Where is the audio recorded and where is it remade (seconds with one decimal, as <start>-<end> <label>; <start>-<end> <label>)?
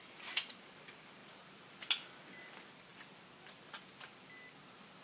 0.0-5.0 recorded